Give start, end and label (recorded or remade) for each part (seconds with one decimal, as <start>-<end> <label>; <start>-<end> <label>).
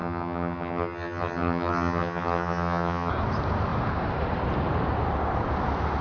0.0-3.1 remade; 3.1-6.0 recorded